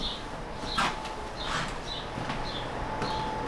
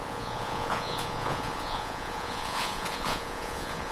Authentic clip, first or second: first